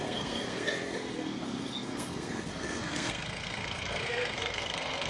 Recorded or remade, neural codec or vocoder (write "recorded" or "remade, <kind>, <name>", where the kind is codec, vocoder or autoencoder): remade, codec, SNAC